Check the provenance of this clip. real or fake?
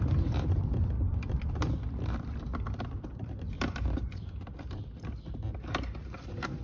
fake